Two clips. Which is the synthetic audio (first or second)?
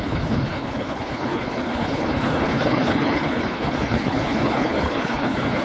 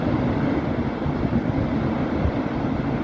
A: first